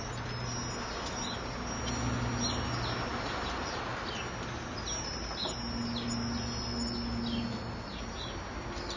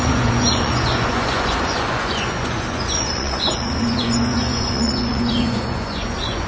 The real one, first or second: first